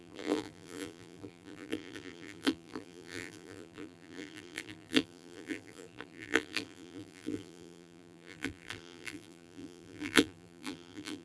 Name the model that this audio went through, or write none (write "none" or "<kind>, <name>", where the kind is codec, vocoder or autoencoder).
vocoder, BigVGAN v2